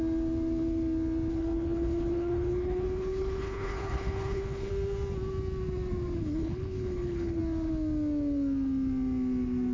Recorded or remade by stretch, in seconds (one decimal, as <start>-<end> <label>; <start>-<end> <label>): 0.0-1.3 recorded; 1.3-4.7 remade; 4.7-6.2 recorded; 6.2-7.4 remade; 7.4-9.7 recorded